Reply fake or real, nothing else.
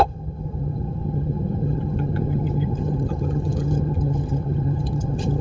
fake